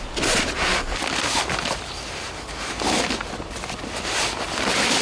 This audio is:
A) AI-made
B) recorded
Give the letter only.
B